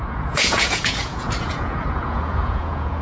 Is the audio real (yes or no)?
no